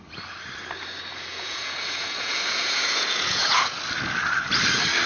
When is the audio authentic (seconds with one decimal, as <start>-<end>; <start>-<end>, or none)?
0.0-1.1; 3.8-5.1